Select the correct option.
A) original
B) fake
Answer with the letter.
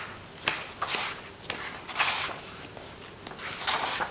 A